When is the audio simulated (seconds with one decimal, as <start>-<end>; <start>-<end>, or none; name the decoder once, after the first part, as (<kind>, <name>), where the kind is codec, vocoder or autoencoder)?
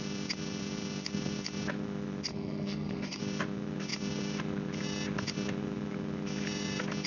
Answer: 2.3-3.2 (codec, SNAC)